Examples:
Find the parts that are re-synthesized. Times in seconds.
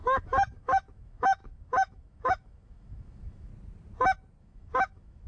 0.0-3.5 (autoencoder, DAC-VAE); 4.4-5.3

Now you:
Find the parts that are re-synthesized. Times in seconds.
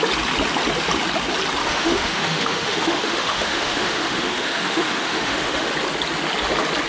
1.6-5.7 (autoencoder, DAC-VAE)